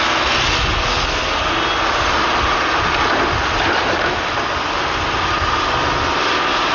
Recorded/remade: recorded